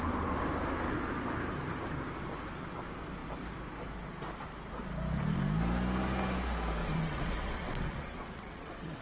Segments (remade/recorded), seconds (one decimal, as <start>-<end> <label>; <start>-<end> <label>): 0.0-6.8 recorded; 6.8-9.0 remade

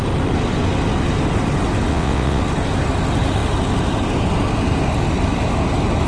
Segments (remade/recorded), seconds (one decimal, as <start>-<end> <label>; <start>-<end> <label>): 0.0-1.9 recorded; 1.9-2.4 remade; 2.4-6.1 recorded

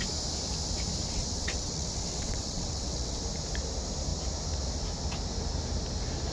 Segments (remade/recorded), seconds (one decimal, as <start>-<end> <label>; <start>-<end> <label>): 0.0-1.0 recorded; 1.0-3.2 remade; 3.2-6.3 recorded

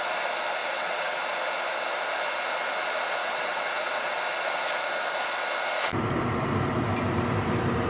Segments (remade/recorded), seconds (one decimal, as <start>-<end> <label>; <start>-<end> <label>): 0.0-0.6 recorded; 0.6-1.2 remade; 1.2-3.2 recorded; 3.2-4.2 remade; 4.2-7.9 recorded

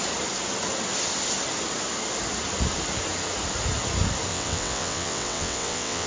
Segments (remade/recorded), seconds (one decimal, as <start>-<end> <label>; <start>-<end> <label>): 0.0-4.3 recorded; 4.3-6.1 remade

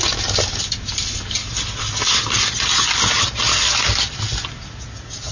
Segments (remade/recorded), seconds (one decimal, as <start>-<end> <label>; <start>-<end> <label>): 0.0-5.3 recorded

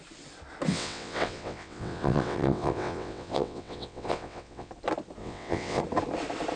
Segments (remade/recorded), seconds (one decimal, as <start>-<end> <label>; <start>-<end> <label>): 0.0-0.7 recorded; 0.7-4.7 remade; 4.7-5.2 recorded; 5.2-5.8 remade; 5.8-6.6 recorded